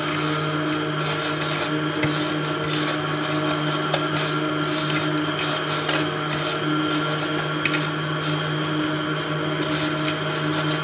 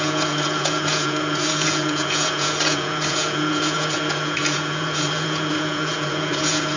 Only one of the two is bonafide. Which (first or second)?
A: first